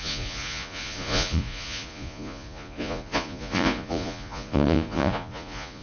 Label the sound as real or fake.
fake